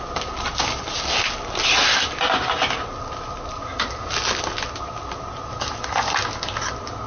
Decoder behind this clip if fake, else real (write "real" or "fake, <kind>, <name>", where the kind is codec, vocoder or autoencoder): real